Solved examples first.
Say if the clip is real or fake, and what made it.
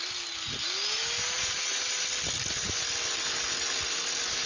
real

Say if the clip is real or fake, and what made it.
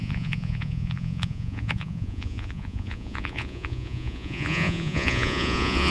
fake, vocoder, Vocos